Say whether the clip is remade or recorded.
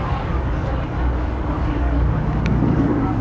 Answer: remade